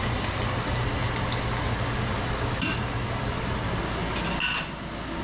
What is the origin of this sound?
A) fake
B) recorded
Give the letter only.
B